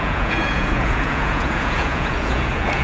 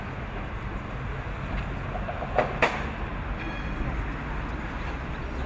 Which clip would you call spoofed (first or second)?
first